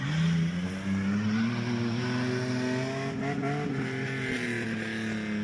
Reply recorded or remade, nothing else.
recorded